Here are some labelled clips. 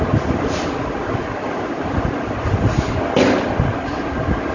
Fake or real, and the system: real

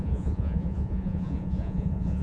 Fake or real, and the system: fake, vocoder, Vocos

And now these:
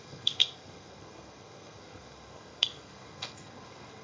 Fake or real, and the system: fake, codec, SNAC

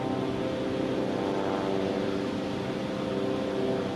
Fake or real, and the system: real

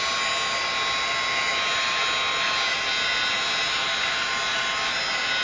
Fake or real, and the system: real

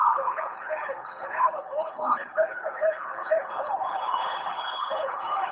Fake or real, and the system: fake, codec, HILCodec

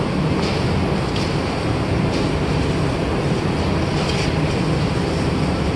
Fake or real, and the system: real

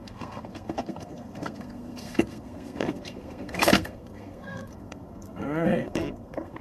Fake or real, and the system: fake, codec, SNAC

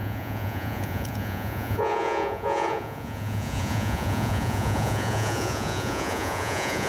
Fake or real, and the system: fake, vocoder, Vocos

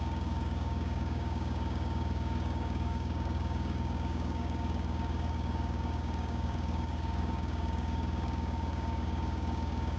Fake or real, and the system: fake, codec, DAC